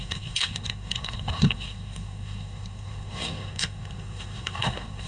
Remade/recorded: remade